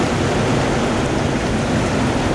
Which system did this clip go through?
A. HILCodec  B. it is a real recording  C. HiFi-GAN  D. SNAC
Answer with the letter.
B